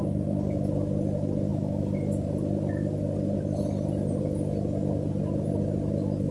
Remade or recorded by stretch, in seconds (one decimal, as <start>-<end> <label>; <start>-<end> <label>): 0.0-6.3 recorded